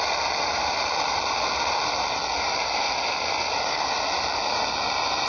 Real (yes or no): yes